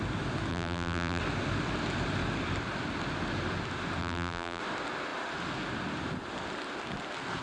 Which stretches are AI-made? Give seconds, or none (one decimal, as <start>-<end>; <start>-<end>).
0.5-1.2; 4.0-4.6